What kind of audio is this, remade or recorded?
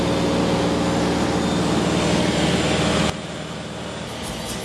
recorded